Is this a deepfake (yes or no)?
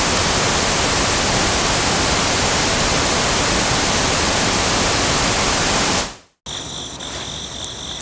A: no